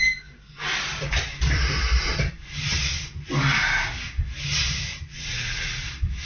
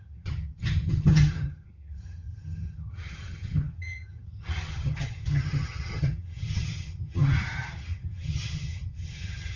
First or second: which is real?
first